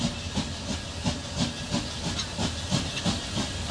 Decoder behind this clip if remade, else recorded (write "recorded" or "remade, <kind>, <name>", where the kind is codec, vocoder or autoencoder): recorded